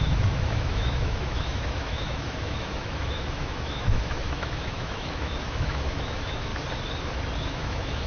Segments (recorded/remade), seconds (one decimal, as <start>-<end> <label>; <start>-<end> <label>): 0.0-6.5 remade; 6.5-7.4 recorded; 7.4-8.1 remade